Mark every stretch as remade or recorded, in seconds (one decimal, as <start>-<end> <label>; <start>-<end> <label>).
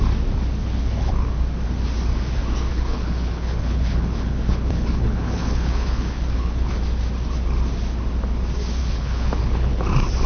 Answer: 0.0-0.6 recorded; 0.6-1.1 remade; 1.1-2.7 recorded; 2.7-6.7 remade; 6.7-8.8 recorded; 8.8-9.8 remade; 9.8-10.3 recorded